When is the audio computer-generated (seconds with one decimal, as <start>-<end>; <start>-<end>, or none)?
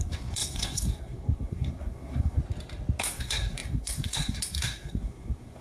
0.0-2.4; 3.0-5.6